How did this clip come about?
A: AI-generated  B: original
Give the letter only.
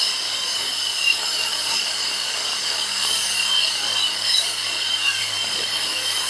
A